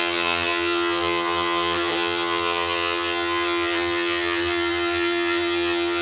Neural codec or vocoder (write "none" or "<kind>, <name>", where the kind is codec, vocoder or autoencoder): vocoder, HiFi-GAN